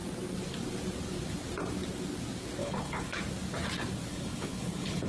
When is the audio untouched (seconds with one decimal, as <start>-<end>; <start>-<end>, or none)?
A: 0.0-2.6; 3.2-4.1